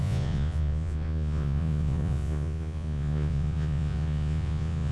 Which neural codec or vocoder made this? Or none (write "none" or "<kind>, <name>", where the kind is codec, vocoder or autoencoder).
vocoder, Vocos